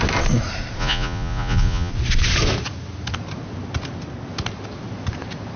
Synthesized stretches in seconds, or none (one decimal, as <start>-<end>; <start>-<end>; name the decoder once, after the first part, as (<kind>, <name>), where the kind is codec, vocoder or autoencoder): 0.8-1.9 (vocoder, Vocos)